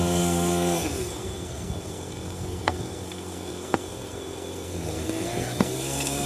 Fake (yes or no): yes